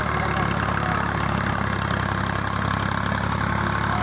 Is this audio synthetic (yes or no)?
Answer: no